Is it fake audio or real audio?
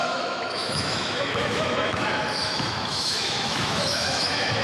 fake